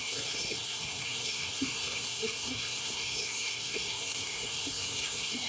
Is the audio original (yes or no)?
no